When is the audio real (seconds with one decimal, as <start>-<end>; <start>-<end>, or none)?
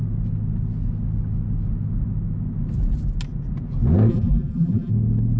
0.0-4.1; 4.9-5.4